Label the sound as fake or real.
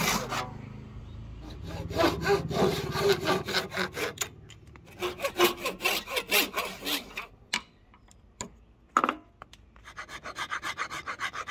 real